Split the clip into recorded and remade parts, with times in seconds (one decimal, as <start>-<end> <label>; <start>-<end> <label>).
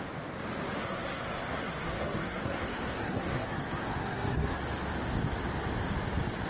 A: 0.0-0.8 recorded; 0.8-4.6 remade; 4.6-6.5 recorded